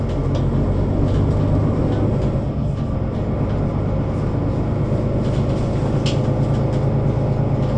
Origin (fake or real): real